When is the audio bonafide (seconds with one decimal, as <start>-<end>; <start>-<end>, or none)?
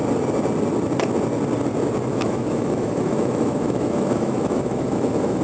0.0-2.1